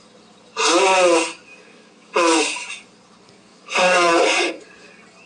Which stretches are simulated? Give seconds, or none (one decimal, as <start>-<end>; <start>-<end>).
1.5-2.4; 3.5-4.5